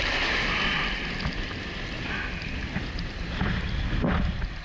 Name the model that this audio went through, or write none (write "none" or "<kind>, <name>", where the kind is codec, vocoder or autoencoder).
none